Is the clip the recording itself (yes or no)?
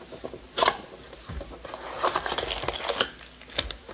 yes